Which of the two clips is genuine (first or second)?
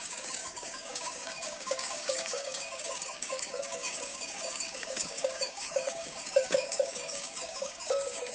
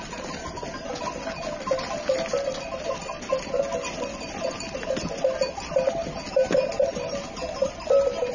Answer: second